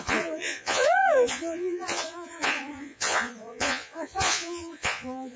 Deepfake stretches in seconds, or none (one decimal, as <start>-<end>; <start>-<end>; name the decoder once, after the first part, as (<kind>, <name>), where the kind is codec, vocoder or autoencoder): 0.0-5.4 (vocoder, Vocos)